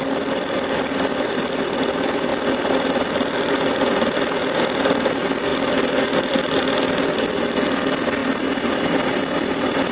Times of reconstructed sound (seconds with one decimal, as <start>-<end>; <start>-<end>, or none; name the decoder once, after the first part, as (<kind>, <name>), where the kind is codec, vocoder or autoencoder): none